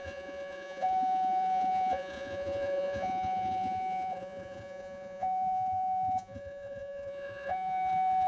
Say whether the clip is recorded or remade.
remade